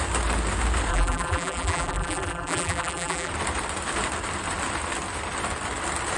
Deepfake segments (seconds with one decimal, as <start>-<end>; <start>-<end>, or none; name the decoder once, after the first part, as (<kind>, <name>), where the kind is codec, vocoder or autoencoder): 0.9-3.3 (vocoder, BigVGAN v2)